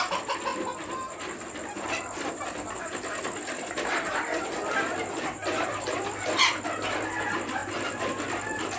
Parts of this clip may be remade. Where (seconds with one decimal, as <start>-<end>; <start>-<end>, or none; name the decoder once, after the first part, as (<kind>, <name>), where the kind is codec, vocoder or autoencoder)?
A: none